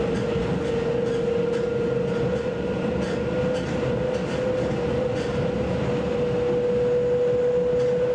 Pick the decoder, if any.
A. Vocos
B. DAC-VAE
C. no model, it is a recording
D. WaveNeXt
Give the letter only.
C